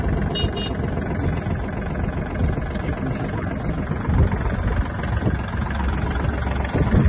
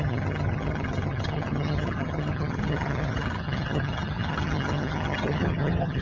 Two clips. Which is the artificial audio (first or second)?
second